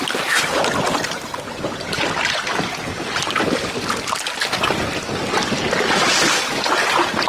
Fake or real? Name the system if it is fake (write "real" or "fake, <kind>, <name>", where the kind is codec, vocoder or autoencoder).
real